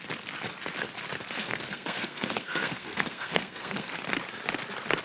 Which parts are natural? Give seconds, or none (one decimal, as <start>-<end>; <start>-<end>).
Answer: 0.0-1.4; 3.9-5.0